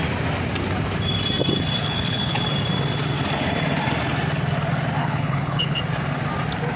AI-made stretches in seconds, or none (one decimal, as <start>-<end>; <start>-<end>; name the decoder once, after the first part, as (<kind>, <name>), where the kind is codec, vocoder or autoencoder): 1.8-2.4 (codec, HILCodec); 5.0-5.8